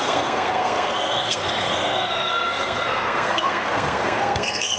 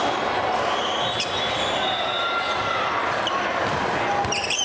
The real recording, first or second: second